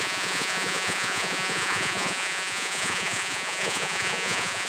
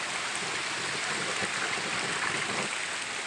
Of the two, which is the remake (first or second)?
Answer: first